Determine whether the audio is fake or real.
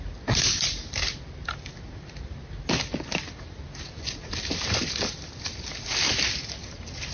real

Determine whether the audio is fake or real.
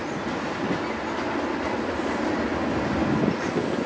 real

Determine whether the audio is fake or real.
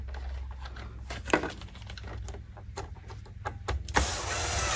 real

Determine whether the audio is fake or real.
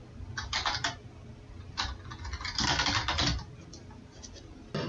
real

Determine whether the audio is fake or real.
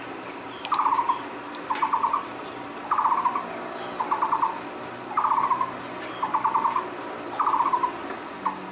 real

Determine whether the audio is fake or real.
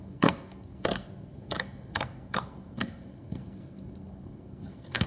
fake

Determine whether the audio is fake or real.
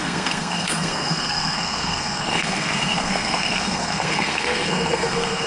fake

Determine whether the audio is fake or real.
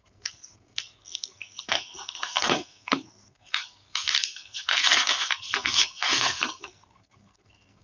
fake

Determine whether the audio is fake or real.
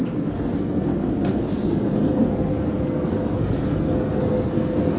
fake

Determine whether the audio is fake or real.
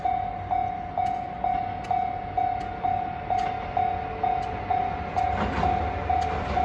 real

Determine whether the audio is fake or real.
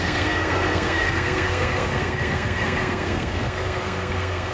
fake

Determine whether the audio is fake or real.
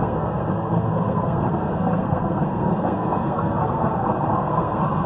fake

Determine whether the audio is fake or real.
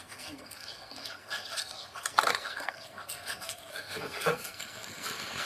fake